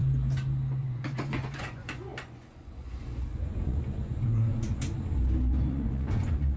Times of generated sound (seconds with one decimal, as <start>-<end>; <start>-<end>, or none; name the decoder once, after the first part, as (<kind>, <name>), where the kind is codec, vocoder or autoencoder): 0.8-4.5 (vocoder, Vocos); 5.7-6.6